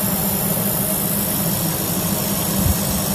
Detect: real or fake real